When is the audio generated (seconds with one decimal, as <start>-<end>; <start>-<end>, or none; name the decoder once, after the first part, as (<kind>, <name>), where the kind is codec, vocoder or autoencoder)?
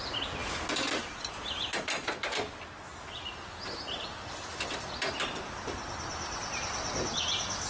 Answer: none